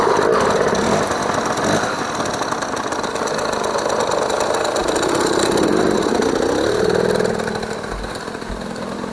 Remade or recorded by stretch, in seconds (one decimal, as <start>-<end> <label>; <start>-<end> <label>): 0.0-9.1 recorded